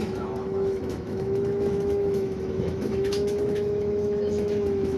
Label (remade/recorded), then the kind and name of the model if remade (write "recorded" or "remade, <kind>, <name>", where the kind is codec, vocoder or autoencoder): remade, autoencoder, DAC-VAE